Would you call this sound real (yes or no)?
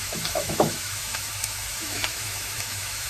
no